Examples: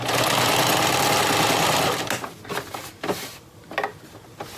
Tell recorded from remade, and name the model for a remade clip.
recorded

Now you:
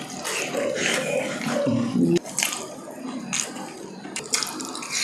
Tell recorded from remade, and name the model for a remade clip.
recorded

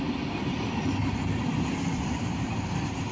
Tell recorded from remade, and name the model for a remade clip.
recorded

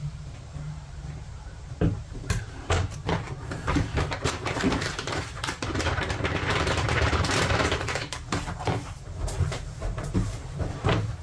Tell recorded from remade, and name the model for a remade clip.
remade, vocoder, BigVGAN v2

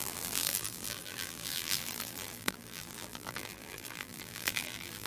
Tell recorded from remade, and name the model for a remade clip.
remade, vocoder, BigVGAN v2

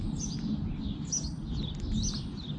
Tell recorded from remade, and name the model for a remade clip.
recorded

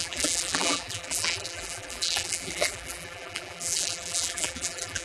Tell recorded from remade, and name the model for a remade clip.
remade, vocoder, BigVGAN v2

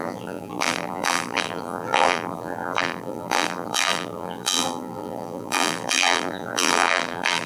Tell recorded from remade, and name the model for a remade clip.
remade, vocoder, BigVGAN v2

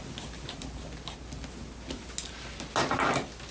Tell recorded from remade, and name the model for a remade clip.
recorded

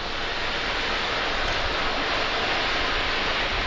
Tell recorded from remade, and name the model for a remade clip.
recorded